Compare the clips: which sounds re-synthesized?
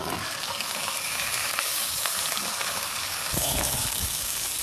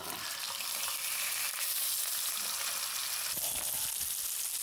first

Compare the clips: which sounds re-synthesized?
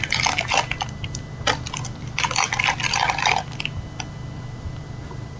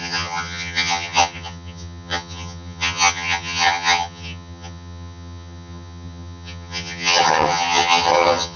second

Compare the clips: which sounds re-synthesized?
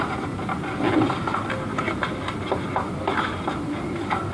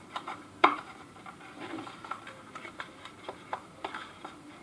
second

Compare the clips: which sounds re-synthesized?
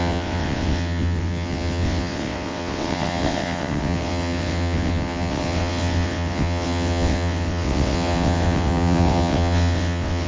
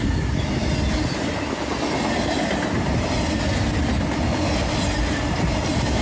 first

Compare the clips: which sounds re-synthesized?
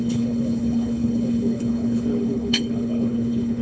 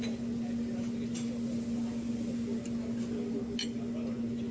first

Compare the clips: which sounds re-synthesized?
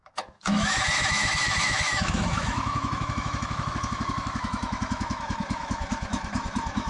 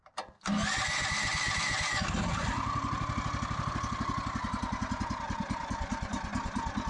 first